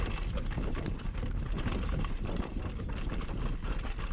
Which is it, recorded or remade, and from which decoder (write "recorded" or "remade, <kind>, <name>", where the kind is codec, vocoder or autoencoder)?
recorded